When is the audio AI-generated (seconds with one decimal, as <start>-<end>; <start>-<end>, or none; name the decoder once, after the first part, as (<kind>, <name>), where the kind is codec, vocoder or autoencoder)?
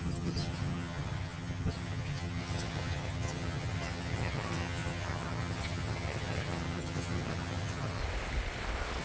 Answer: 0.0-8.0 (vocoder, HiFi-GAN)